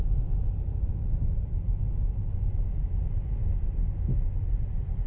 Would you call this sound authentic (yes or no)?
yes